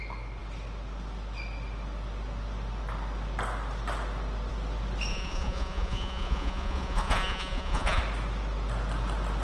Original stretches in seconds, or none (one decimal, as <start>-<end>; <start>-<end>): 0.0-5.1; 8.0-9.4